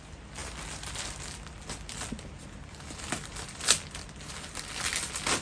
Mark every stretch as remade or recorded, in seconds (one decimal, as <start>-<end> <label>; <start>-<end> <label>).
0.0-5.4 recorded